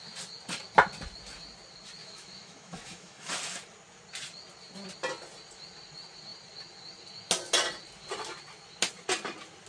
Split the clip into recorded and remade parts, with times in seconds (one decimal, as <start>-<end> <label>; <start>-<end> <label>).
0.0-2.0 recorded; 2.0-3.3 remade; 3.3-9.7 recorded